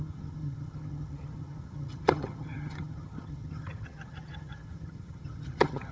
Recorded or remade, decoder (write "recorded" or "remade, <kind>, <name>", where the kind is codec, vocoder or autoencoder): remade, vocoder, HiFi-GAN